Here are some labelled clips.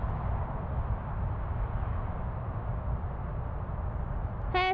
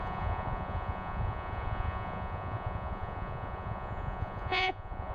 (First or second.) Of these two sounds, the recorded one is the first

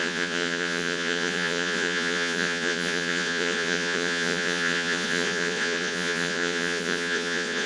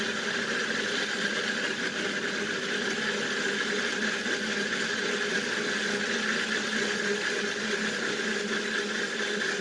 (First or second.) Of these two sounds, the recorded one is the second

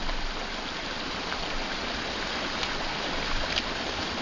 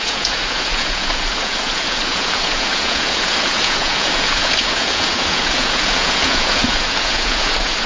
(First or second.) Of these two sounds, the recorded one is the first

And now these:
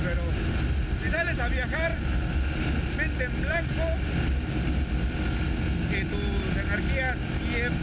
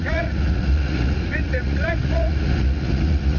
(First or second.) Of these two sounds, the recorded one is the first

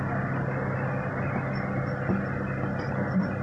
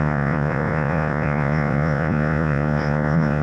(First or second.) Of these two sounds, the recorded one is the first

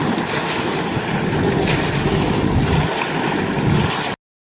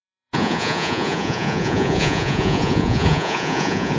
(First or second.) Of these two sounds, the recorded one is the first